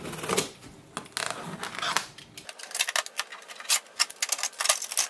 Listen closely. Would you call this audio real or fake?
real